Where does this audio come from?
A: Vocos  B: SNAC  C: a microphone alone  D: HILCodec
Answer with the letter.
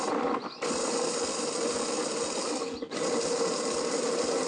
C